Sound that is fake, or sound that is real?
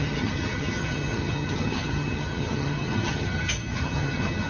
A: fake